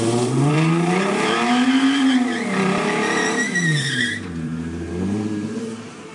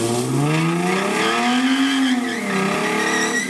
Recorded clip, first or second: second